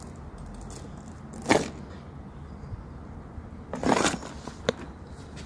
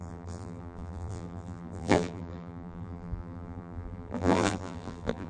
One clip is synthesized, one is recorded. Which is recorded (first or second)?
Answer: first